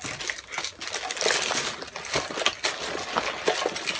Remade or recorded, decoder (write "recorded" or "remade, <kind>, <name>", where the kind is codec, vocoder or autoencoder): recorded